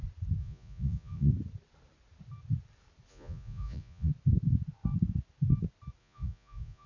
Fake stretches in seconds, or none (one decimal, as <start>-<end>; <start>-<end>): 0.4-1.3; 3.1-4.1; 6.0-6.9